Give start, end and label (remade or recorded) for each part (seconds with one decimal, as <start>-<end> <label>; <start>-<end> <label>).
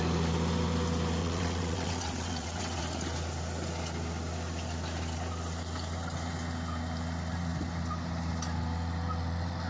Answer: 0.0-1.2 recorded; 1.2-2.8 remade; 2.8-9.7 recorded